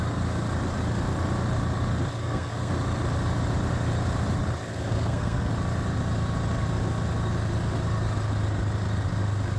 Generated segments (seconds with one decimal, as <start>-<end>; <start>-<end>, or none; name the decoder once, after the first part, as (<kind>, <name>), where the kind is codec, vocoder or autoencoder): 2.2-2.7 (codec, SNAC); 4.7-5.5